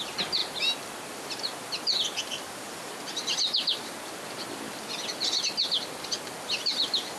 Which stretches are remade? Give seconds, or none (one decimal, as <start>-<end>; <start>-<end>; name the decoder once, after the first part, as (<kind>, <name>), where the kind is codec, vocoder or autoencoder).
none